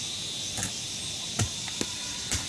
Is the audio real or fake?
real